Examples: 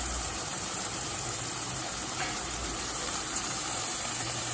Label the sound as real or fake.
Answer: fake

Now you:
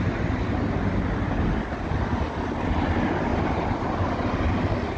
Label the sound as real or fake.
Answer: real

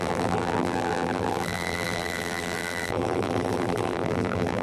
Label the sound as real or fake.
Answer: fake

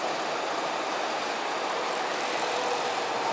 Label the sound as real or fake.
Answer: fake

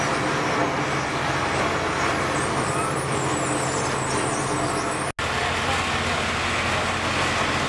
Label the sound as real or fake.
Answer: real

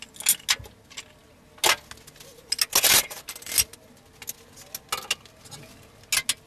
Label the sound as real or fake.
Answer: real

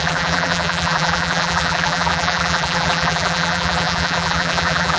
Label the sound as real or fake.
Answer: fake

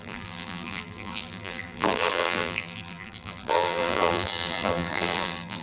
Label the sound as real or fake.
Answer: fake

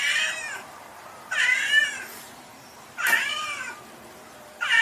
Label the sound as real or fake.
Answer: fake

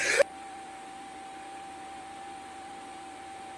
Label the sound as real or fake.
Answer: fake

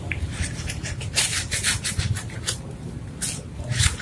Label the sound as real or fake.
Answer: real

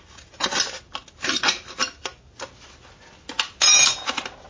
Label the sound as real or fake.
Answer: real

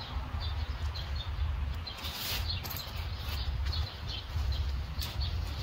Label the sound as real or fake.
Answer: real